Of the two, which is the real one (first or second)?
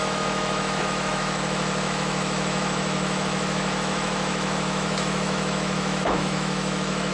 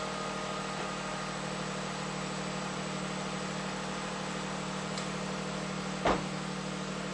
second